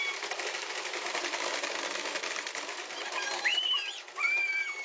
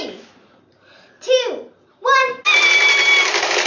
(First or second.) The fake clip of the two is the first